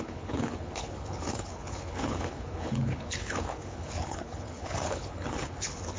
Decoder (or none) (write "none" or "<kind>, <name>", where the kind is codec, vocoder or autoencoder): codec, HILCodec